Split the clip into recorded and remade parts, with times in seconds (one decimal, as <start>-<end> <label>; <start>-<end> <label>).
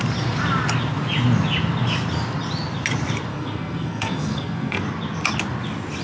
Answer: 0.0-3.3 recorded; 3.3-4.8 remade; 4.8-6.0 recorded